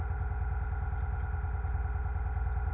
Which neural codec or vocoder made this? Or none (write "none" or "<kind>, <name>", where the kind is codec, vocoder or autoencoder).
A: none